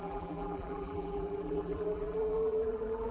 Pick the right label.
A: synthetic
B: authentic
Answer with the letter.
A